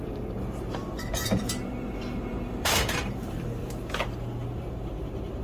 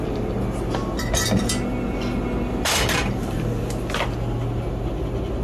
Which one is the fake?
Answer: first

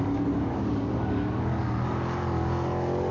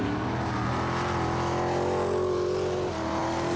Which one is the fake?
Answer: first